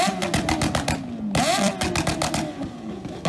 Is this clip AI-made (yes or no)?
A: no